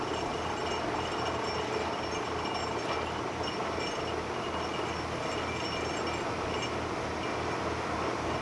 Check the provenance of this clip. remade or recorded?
recorded